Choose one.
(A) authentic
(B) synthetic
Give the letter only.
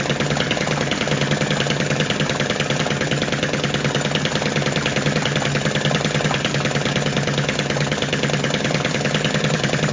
A